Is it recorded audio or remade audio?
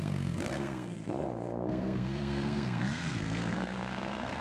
remade